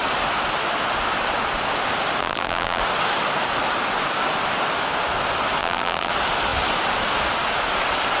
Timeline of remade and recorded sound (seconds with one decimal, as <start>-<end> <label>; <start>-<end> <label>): 0.0-2.2 recorded; 2.2-2.8 remade; 2.8-5.6 recorded; 5.6-6.1 remade; 6.1-8.2 recorded